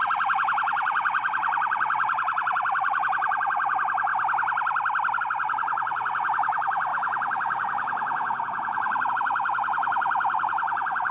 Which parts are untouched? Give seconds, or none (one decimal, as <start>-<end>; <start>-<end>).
4.1-5.2